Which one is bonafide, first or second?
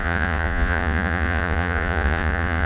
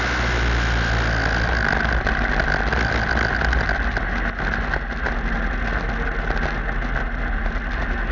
second